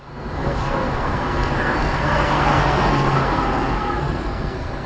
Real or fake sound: fake